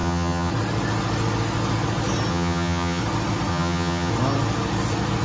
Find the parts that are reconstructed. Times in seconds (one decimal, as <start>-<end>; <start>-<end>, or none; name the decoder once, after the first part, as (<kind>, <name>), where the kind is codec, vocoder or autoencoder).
0.0-0.5 (vocoder, HiFi-GAN); 2.3-3.0; 3.5-4.1